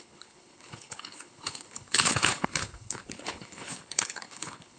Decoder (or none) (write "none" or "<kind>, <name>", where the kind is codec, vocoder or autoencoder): codec, HILCodec